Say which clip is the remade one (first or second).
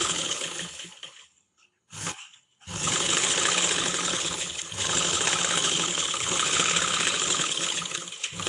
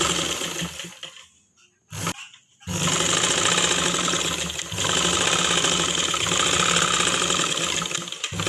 first